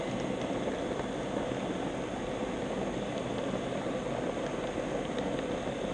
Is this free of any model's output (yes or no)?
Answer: yes